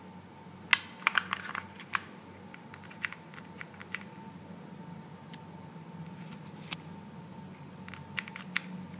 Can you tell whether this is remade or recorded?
recorded